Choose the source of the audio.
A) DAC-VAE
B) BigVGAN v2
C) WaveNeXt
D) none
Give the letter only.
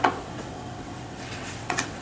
C